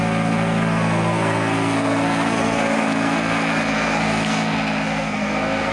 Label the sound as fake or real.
fake